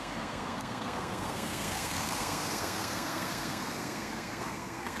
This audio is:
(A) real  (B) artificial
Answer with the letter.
B